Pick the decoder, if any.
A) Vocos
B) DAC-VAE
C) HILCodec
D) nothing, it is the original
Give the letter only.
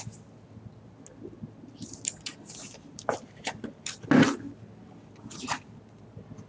D